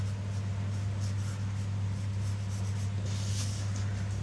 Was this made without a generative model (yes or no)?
yes